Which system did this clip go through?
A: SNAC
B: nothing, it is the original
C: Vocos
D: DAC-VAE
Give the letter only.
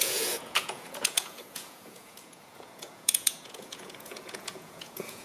C